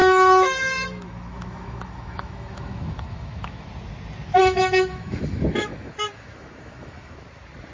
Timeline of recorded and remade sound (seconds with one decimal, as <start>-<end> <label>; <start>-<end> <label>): 0.0-3.7 remade; 3.7-4.4 recorded; 4.4-7.2 remade; 7.2-7.7 recorded